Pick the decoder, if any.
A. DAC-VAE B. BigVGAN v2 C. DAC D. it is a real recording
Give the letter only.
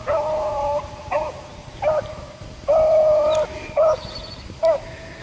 D